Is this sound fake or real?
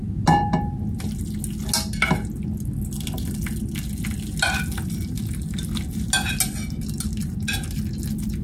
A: real